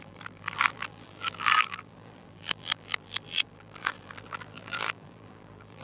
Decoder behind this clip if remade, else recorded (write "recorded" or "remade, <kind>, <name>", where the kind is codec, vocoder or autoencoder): remade, vocoder, BigVGAN v2